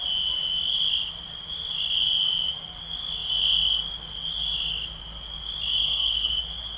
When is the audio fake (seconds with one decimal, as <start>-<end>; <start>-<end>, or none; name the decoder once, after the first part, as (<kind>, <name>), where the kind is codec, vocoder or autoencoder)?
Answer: 5.8-6.3 (codec, SNAC)